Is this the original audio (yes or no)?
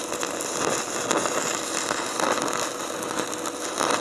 yes